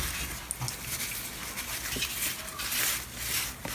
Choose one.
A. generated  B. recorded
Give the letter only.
B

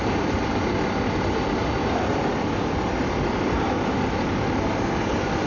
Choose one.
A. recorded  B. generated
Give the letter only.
A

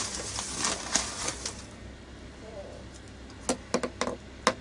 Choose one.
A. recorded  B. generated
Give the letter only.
A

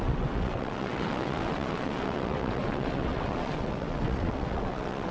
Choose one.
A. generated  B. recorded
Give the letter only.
A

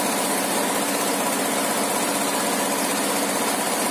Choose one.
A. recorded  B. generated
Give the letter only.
A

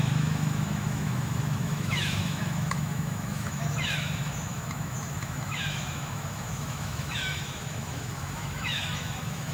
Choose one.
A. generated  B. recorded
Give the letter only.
A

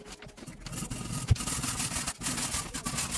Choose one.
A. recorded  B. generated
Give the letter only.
A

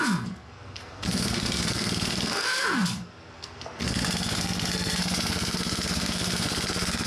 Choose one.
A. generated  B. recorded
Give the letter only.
A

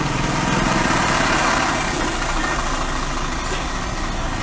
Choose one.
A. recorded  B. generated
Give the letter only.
A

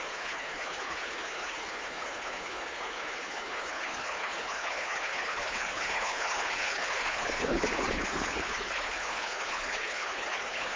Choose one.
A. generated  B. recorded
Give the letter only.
A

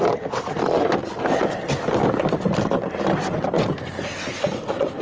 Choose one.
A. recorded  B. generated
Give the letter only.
A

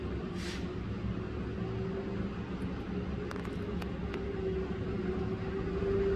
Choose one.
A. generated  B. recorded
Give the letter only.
B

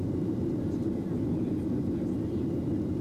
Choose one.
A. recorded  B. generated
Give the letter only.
B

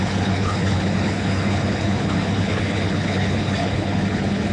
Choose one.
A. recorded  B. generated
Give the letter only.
B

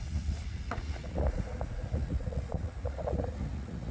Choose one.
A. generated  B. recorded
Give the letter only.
A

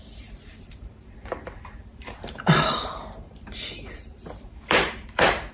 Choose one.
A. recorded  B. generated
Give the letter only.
B